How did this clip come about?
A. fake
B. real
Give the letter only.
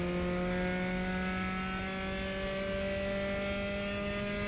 B